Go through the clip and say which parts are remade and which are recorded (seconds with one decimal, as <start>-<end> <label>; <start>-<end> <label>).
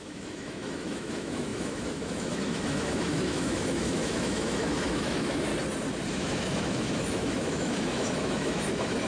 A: 0.0-5.5 remade; 5.5-6.1 recorded; 6.1-9.1 remade